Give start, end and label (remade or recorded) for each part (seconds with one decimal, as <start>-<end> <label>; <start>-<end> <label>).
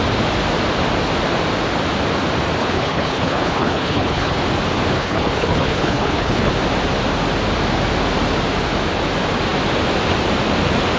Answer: 0.0-2.6 recorded; 2.6-4.4 remade; 4.4-5.0 recorded; 5.0-6.5 remade; 6.5-11.0 recorded